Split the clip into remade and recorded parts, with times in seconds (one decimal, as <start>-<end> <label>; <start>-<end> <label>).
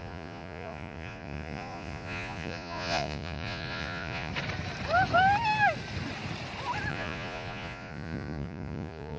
0.0-4.3 remade; 4.3-6.9 recorded; 6.9-9.2 remade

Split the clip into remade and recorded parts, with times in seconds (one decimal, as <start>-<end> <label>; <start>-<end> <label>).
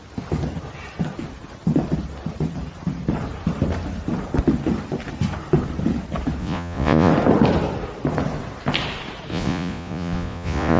0.0-6.4 recorded; 6.4-7.1 remade; 7.1-9.3 recorded; 9.3-10.8 remade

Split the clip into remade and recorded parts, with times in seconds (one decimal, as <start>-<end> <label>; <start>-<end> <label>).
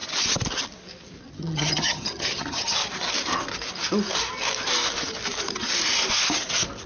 0.0-1.3 recorded; 1.3-2.8 remade; 2.8-6.9 recorded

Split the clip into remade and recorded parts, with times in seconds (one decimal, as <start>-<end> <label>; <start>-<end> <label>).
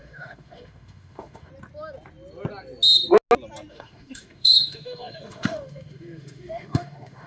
0.0-1.5 remade; 1.5-3.7 recorded; 3.7-7.3 remade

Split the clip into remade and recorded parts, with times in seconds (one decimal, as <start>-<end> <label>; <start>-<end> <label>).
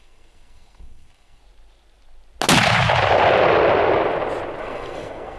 0.0-1.4 remade; 1.4-4.6 recorded; 4.6-5.4 remade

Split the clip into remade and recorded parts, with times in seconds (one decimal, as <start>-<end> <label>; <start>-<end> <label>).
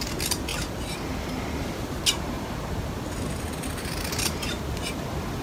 0.0-5.4 recorded